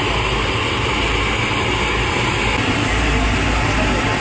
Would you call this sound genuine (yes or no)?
yes